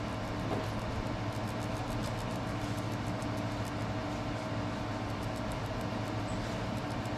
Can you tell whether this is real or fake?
real